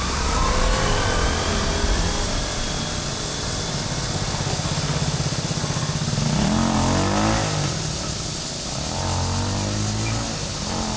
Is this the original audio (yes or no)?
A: yes